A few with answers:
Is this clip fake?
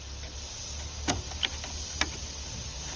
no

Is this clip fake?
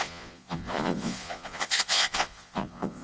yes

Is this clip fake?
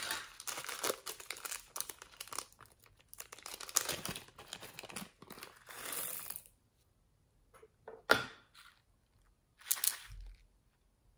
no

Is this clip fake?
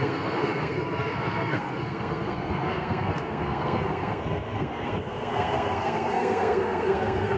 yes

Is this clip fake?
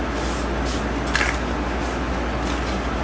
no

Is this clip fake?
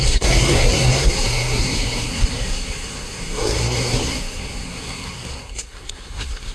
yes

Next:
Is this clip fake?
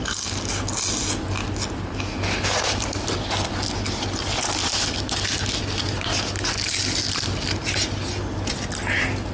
no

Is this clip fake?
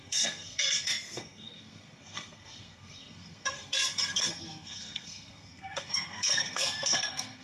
yes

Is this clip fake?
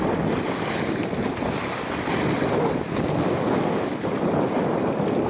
no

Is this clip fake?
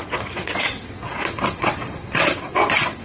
yes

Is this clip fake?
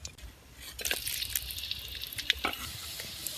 no